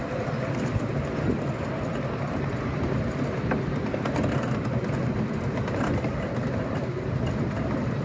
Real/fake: real